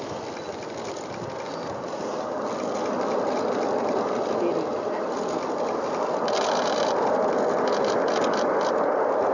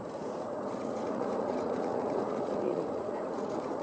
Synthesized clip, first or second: second